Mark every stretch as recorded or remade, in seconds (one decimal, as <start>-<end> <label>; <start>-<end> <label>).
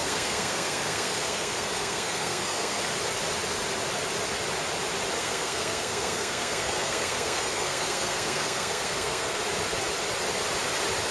0.0-2.8 remade; 2.8-5.2 recorded; 5.2-9.4 remade; 9.4-11.1 recorded